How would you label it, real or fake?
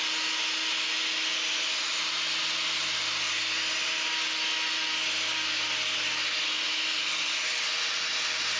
real